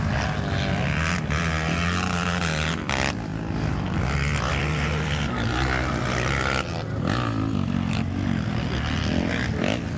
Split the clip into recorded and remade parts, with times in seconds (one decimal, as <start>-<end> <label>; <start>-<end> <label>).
0.0-10.0 recorded